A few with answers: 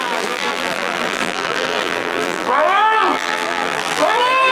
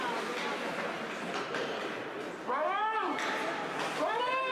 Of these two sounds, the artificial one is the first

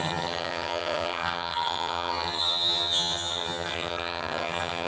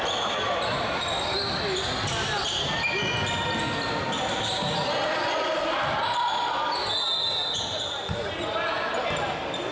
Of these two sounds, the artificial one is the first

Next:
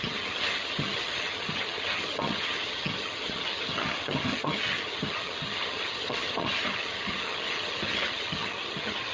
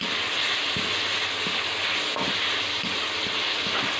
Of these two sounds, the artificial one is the first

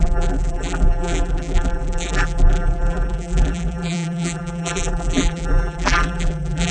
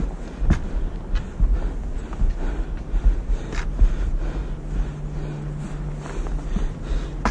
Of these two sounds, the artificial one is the first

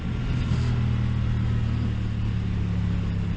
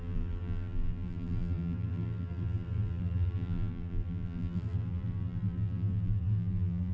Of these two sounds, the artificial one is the second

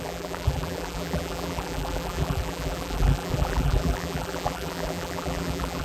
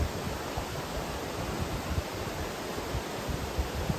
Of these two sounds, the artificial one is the first